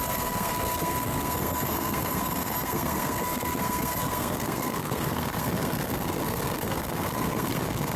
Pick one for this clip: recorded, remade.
remade